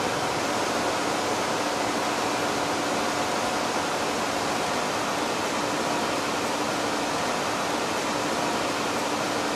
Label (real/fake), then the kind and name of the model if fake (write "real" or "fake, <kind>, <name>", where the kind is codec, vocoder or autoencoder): real